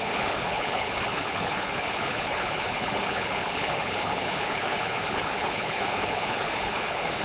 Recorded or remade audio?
remade